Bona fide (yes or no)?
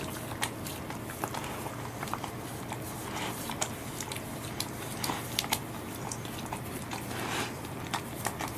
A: yes